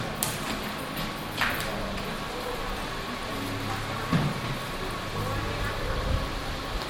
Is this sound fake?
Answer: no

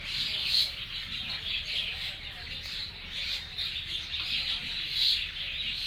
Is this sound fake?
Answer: no